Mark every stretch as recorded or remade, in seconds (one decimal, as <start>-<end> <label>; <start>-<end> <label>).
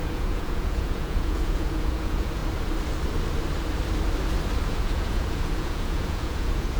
0.0-2.4 remade; 2.4-4.7 recorded; 4.7-6.8 remade